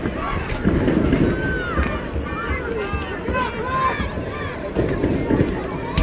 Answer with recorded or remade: recorded